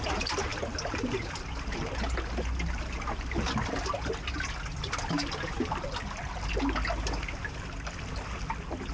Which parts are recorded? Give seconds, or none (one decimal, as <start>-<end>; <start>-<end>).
0.0-8.9